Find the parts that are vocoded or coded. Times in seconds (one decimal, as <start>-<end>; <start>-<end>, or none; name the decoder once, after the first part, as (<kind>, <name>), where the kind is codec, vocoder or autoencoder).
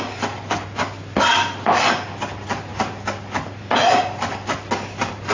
none